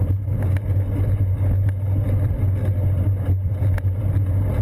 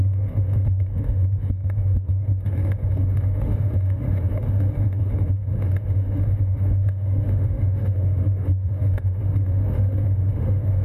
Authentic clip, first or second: first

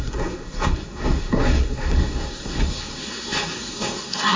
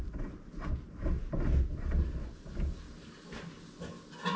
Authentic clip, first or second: second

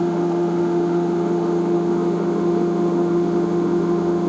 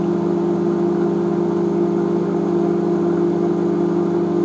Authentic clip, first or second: second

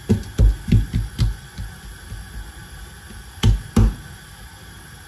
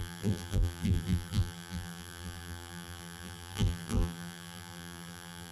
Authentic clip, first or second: first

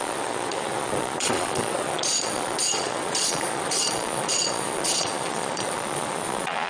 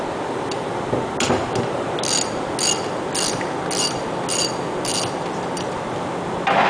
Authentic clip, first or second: second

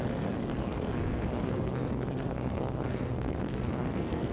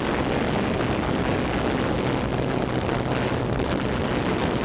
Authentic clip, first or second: second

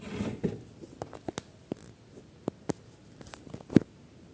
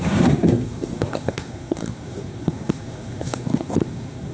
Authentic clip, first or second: first